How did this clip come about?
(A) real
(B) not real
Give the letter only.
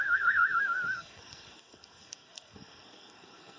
B